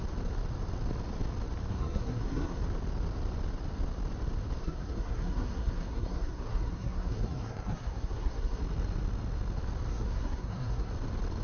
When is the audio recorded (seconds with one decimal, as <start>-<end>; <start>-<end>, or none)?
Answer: 0.0-1.7; 2.6-4.6; 8.6-9.9; 10.9-11.4